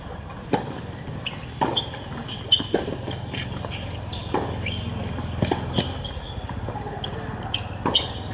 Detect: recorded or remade recorded